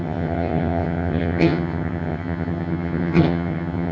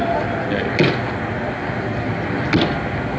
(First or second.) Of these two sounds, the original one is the second